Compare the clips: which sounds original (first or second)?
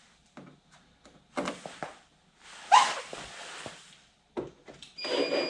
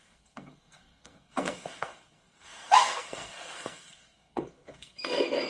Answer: first